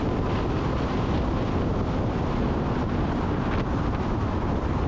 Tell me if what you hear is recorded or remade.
recorded